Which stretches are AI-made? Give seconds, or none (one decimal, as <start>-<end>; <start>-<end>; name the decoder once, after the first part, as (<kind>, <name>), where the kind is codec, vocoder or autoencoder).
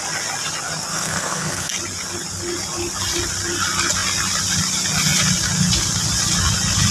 0.9-1.7 (codec, SNAC)